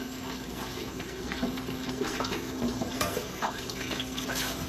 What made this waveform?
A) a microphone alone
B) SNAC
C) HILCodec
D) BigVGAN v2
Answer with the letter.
B